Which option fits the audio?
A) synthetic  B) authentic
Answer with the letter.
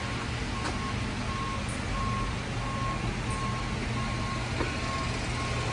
B